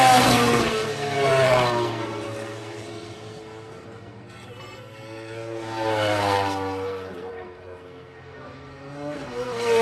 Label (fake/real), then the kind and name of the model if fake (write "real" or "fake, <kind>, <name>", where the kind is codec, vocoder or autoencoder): fake, codec, SNAC